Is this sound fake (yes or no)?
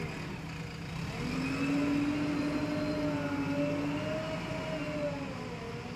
no